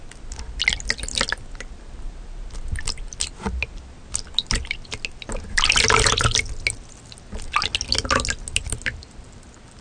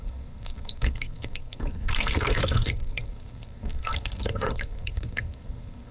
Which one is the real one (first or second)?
first